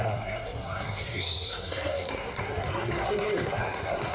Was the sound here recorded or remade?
remade